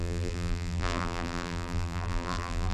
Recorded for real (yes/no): no